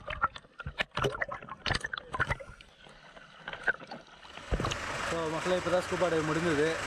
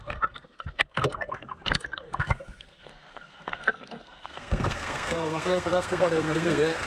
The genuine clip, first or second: first